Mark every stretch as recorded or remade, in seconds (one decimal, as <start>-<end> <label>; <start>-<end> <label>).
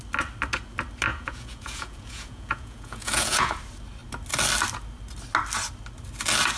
0.0-1.1 recorded; 1.1-3.6 remade; 3.6-6.6 recorded